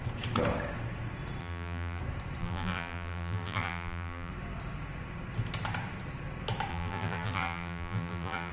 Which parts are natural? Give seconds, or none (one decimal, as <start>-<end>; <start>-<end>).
0.0-1.4; 2.0-2.4; 4.3-6.7